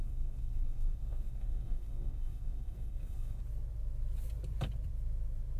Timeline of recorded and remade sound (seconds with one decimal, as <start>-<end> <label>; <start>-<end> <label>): 0.0-3.4 remade; 3.4-5.6 recorded